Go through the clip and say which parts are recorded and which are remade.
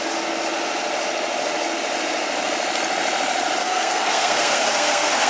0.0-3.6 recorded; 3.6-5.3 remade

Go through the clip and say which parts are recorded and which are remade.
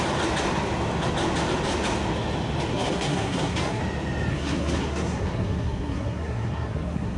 0.0-2.7 recorded; 2.7-3.8 remade; 3.8-4.3 recorded; 4.3-7.2 remade